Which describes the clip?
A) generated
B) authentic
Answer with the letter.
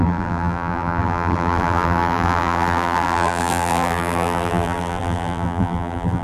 A